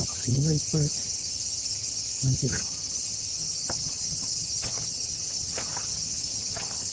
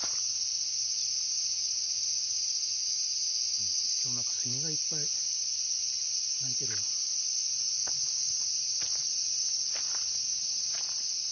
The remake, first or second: first